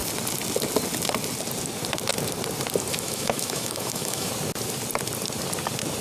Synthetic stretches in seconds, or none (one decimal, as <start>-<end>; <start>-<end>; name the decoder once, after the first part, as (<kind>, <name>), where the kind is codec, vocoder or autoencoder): 2.9-4.3 (autoencoder, DAC-VAE)